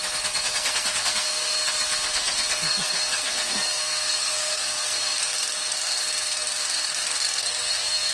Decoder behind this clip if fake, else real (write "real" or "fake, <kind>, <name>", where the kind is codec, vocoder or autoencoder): fake, codec, SNAC